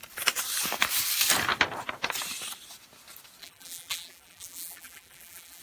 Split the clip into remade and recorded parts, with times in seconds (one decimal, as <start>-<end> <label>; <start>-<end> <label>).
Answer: 0.0-3.4 recorded; 3.4-5.6 remade

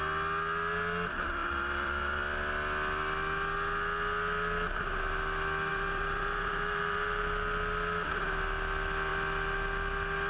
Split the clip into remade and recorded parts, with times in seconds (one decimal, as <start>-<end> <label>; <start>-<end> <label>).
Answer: 0.0-1.4 recorded; 1.4-2.2 remade; 2.2-5.7 recorded; 5.7-7.2 remade; 7.2-10.3 recorded

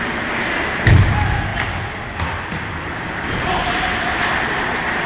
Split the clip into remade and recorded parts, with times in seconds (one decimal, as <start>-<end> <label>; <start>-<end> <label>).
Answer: 0.0-5.1 recorded